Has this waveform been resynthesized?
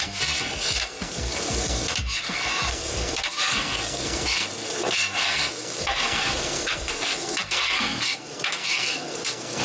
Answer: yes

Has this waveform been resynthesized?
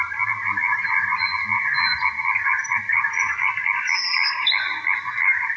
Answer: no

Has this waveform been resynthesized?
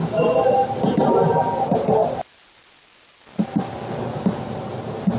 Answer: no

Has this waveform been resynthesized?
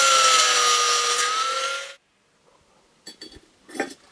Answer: no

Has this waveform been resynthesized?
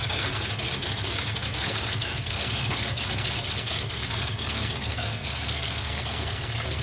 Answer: yes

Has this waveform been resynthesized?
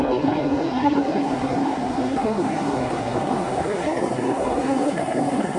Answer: yes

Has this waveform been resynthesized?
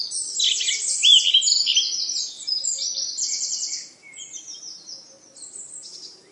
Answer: no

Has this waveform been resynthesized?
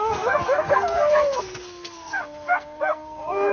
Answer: yes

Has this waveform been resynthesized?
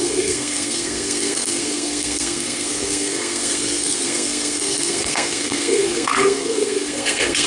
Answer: yes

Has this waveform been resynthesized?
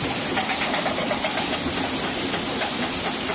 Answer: no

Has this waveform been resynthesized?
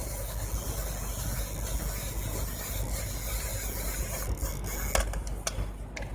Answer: no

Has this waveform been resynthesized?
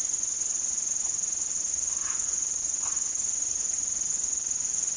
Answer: no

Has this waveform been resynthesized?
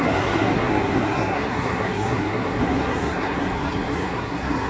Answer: yes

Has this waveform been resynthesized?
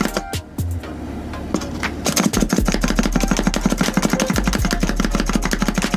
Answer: no